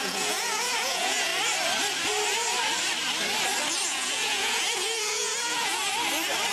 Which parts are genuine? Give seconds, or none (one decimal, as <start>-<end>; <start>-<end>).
1.3-3.8; 5.8-6.5